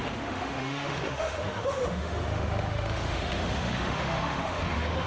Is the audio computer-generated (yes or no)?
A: yes